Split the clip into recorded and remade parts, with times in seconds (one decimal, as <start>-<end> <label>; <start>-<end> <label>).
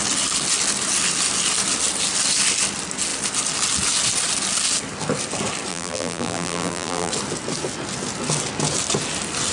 0.0-5.7 recorded; 5.7-7.1 remade; 7.1-9.5 recorded